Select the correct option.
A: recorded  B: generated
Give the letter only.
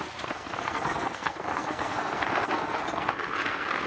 B